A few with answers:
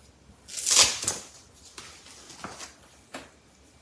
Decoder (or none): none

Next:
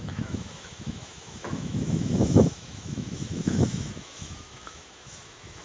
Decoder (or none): autoencoder, DAC-VAE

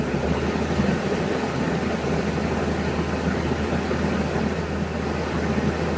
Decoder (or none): none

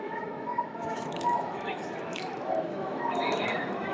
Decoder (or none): autoencoder, DAC-VAE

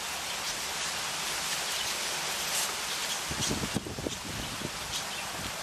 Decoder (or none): none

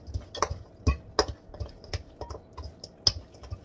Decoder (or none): none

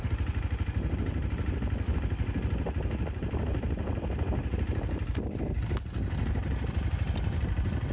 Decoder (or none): none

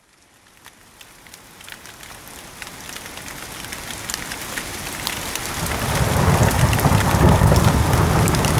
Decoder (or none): none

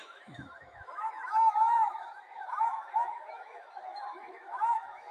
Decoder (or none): autoencoder, DAC-VAE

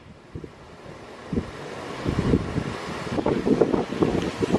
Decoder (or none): none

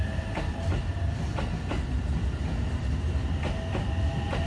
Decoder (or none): none